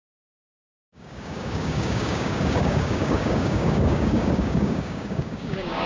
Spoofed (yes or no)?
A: yes